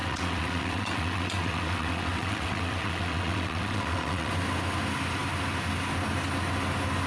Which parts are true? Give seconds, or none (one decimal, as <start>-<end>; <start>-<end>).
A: 4.3-7.1

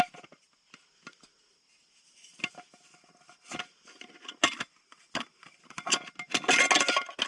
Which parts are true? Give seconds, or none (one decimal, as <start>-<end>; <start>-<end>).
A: 0.0-7.3

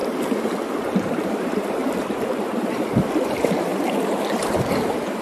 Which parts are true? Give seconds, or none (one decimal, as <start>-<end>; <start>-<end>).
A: 0.0-0.8; 1.8-2.3

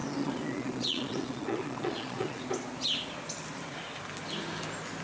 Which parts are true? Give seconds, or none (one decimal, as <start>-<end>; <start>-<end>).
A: 2.4-5.0

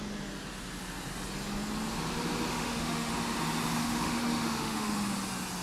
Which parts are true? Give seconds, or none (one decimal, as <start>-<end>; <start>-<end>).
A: 0.0-2.5; 3.1-3.8; 4.9-5.6